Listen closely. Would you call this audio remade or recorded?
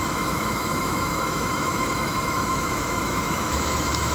remade